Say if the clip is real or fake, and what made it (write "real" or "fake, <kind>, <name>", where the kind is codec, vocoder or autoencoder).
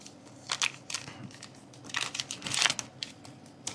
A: real